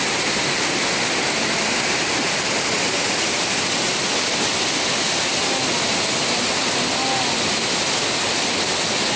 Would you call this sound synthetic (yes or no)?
no